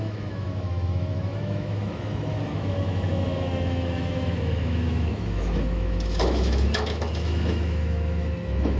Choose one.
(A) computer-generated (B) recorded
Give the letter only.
A